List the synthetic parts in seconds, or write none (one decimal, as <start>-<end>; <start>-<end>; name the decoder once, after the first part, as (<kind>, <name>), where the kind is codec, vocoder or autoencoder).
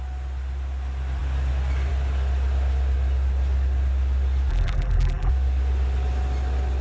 4.5-5.3 (vocoder, BigVGAN v2)